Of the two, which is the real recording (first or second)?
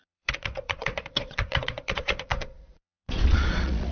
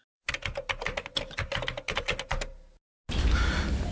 second